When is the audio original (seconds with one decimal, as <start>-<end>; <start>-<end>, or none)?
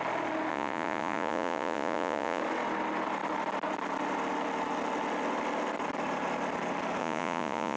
0.0-0.5; 2.4-7.0